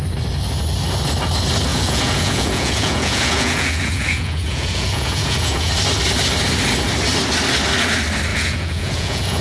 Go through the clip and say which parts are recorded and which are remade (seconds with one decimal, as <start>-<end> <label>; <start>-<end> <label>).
0.0-1.7 recorded; 1.7-5.7 remade; 5.7-8.3 recorded; 8.3-9.4 remade